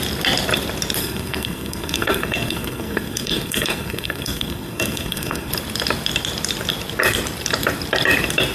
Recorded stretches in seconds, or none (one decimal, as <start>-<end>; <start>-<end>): 0.0-1.0; 5.5-8.5